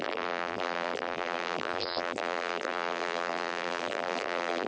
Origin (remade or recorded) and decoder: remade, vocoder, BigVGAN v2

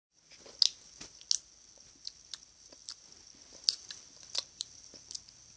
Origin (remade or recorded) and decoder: recorded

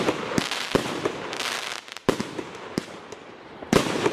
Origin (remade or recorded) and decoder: recorded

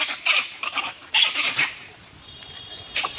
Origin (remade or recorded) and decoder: remade, vocoder, BigVGAN v2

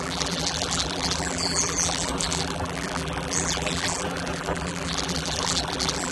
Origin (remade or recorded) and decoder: remade, vocoder, BigVGAN v2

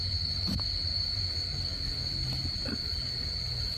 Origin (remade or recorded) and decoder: remade, vocoder, BigVGAN v2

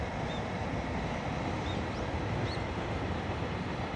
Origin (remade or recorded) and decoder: recorded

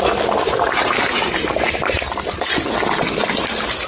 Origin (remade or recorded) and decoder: recorded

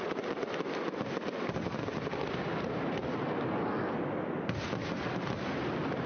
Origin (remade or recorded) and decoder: recorded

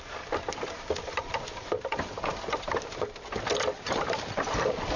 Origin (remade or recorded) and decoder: remade, vocoder, BigVGAN v2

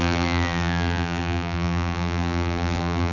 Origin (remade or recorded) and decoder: remade, vocoder, BigVGAN v2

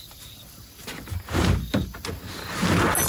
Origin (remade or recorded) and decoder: recorded